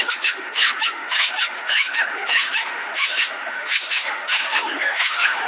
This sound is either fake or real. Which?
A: fake